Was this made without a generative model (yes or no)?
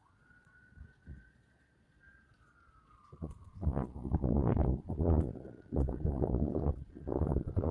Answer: no